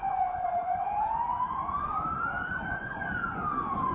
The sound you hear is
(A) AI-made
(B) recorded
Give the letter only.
A